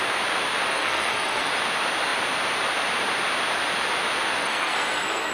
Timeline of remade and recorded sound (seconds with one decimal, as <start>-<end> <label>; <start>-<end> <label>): 0.0-0.7 recorded; 0.7-1.5 remade; 1.5-4.4 recorded; 4.4-5.3 remade